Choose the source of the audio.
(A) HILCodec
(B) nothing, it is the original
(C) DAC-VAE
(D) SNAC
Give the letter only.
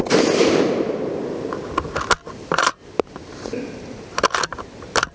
B